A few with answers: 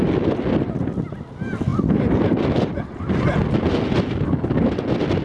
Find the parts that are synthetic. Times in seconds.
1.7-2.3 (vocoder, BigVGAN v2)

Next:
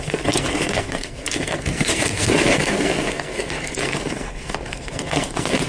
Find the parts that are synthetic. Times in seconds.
0.0-5.7 (codec, SNAC)

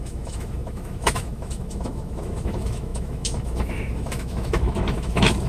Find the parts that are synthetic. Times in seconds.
0.0-5.5 (autoencoder, DAC-VAE)